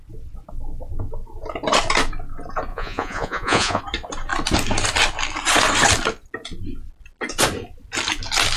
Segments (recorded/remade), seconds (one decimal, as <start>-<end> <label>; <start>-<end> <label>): 0.0-2.7 recorded; 2.7-3.8 remade; 3.8-8.6 recorded